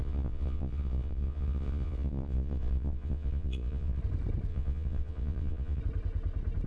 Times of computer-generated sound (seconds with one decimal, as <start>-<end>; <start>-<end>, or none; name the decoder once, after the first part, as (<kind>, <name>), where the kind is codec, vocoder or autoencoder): 0.0-4.0 (vocoder, Vocos); 4.5-5.8